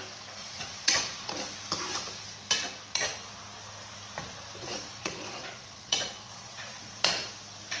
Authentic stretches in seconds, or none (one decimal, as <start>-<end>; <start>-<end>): 0.0-0.4; 1.3-4.6; 7.3-7.8